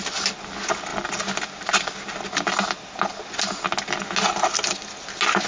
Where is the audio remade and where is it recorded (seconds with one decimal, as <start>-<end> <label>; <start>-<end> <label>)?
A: 0.0-5.5 recorded